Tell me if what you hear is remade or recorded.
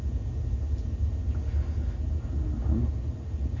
recorded